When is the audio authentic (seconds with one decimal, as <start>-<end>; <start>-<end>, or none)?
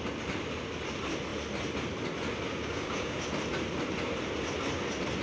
0.0-2.6; 3.2-5.2